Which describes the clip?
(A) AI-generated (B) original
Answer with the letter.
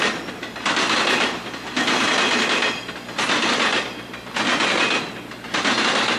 B